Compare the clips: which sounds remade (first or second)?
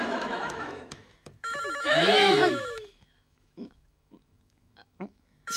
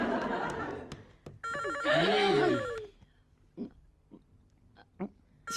first